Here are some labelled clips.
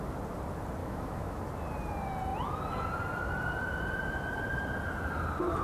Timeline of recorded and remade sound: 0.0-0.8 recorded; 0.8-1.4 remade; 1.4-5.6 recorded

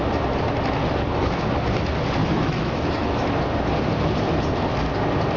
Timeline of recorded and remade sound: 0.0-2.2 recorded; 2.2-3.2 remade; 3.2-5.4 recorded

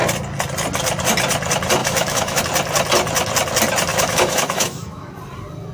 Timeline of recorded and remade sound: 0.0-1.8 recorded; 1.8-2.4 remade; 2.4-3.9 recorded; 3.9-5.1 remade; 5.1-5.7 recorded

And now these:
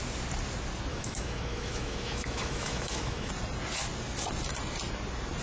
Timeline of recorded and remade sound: 0.0-0.9 recorded; 0.9-3.3 remade; 3.3-5.4 recorded